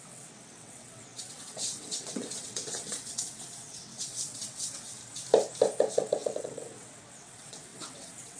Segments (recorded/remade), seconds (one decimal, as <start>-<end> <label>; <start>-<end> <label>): 0.0-5.0 remade; 5.0-5.8 recorded; 5.8-8.4 remade